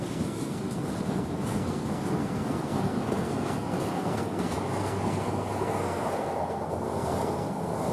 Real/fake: fake